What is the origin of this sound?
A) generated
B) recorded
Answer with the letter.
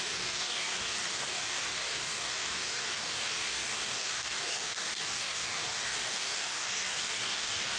A